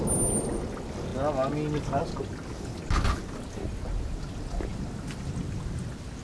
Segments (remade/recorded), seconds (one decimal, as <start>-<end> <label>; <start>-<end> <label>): 0.0-6.2 recorded